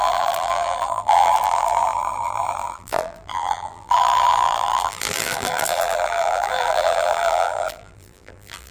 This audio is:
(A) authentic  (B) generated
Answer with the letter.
B